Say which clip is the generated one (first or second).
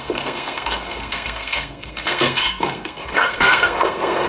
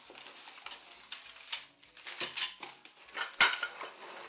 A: first